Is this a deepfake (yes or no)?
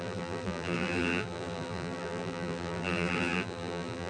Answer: yes